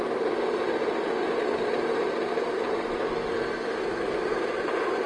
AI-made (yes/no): no